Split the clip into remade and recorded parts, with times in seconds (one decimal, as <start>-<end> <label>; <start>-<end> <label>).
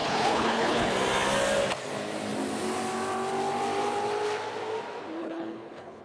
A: 0.0-0.9 remade; 0.9-5.2 recorded; 5.2-6.0 remade